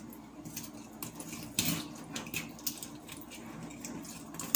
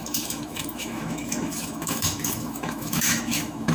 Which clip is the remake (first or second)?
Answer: second